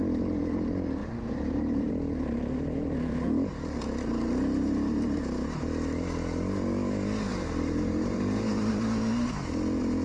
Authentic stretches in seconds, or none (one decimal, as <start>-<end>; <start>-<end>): 0.0-1.0; 1.9-7.3; 8.7-10.0